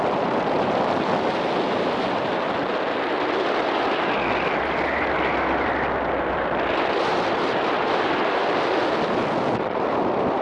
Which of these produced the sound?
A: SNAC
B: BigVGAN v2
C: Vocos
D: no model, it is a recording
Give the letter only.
D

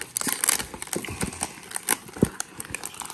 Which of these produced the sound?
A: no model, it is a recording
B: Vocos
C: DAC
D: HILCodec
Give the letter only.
A